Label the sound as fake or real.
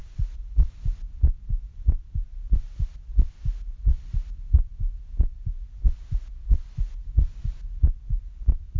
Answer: real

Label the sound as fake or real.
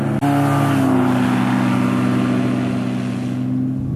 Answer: real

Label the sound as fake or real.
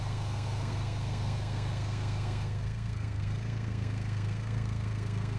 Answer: fake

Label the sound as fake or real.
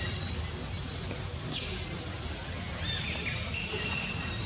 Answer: real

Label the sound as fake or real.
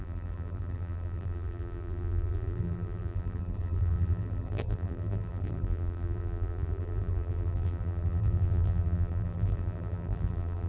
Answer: fake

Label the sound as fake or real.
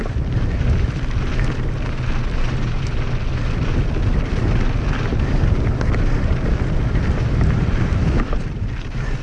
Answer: real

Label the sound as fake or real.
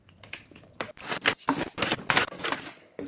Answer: real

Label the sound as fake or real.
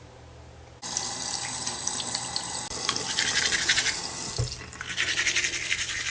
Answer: real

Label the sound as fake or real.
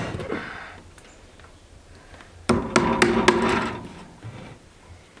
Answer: real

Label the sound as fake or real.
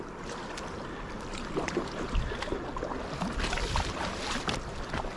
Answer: real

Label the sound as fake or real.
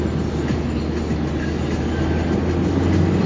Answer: real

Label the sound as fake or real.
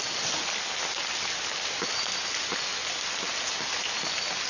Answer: real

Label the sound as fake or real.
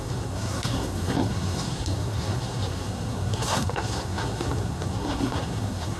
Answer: fake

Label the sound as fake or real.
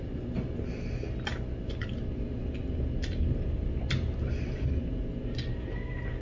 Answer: real